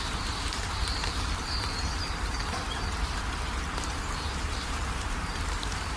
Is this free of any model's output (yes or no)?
no